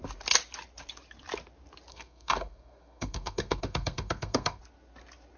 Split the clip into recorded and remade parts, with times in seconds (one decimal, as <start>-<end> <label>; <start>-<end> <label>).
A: 0.0-1.9 recorded; 1.9-4.6 remade; 4.6-5.4 recorded